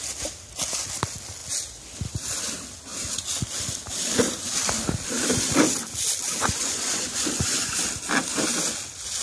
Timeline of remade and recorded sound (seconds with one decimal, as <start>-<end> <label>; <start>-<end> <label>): 0.0-6.4 recorded; 6.4-7.7 remade; 7.7-9.2 recorded